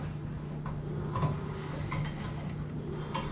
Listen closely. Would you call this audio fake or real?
real